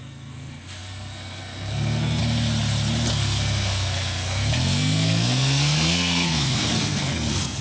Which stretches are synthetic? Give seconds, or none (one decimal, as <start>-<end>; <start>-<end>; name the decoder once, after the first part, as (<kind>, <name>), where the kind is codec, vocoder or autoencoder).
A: 0.0-2.2 (codec, SNAC); 3.1-7.6

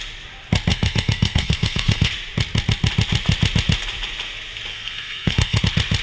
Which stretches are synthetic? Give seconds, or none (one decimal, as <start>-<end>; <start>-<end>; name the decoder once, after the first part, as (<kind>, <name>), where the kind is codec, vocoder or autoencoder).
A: 0.7-2.1 (codec, SNAC); 4.7-5.6

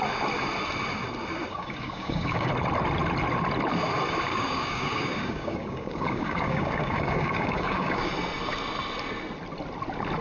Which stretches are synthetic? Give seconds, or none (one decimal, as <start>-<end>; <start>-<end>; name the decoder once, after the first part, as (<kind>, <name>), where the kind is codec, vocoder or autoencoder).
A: 1.5-2.5 (codec, DAC); 4.3-8.1